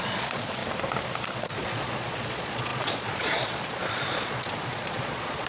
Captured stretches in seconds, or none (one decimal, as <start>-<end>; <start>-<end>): 0.6-1.3